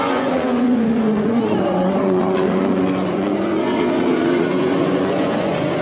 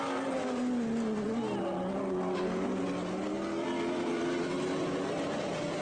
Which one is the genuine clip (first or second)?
second